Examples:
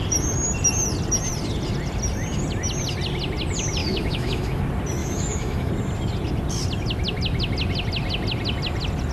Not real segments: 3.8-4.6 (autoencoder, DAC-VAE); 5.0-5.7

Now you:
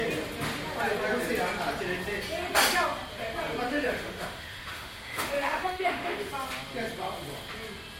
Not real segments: 3.7-6.3 (autoencoder, DAC-VAE)

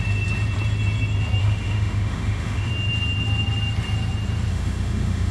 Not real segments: 1.4-2.7 (autoencoder, DAC-VAE); 4.5-5.3

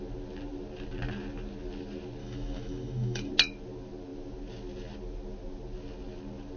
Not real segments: 2.2-3.3 (autoencoder, DAC-VAE)

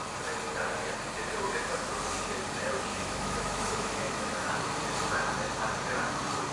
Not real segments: 2.9-4.5 (autoencoder, DAC-VAE)

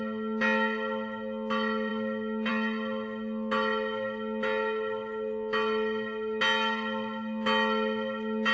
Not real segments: none

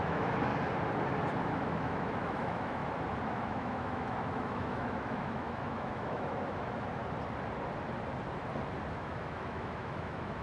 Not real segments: 0.0-0.5 (autoencoder, DAC-VAE); 1.4-2.8; 3.3-7.0; 8.9-10.4

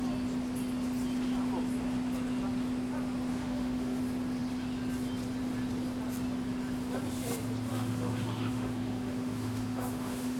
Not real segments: 3.3-4.0 (autoencoder, DAC-VAE); 7.7-10.4